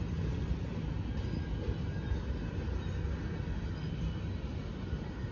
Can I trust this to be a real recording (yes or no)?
yes